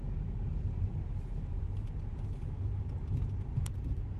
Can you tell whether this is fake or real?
real